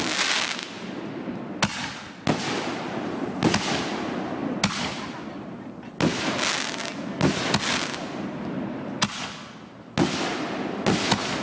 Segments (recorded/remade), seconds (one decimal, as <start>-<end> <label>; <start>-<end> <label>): 0.0-11.4 recorded

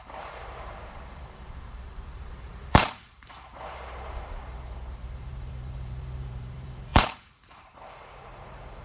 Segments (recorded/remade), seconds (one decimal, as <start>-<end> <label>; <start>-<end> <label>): 0.0-8.8 remade

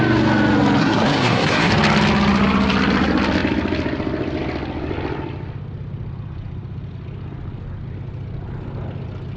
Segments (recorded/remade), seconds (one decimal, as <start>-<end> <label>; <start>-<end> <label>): 0.0-0.8 recorded; 0.8-1.7 remade; 1.7-9.4 recorded

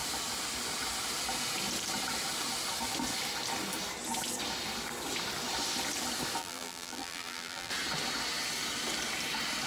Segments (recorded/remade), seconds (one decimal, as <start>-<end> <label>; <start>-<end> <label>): 0.0-6.4 recorded; 6.4-7.7 remade; 7.7-9.7 recorded